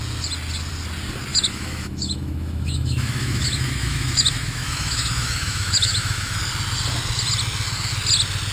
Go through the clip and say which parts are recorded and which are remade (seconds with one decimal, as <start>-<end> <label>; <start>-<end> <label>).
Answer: 0.0-1.3 recorded; 1.3-6.4 remade; 6.4-8.5 recorded